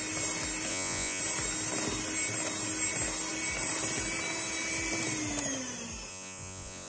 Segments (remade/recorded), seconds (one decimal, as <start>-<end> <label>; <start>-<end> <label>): 0.0-0.7 recorded; 0.7-1.2 remade; 1.2-6.1 recorded; 6.1-6.9 remade